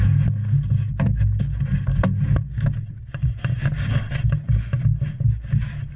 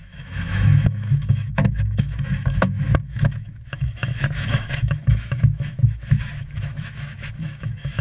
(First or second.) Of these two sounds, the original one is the first